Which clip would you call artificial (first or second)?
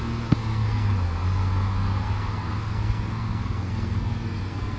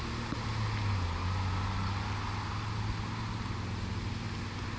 first